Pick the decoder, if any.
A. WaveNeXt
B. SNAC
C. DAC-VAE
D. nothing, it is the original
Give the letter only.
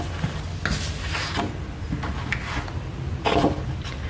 D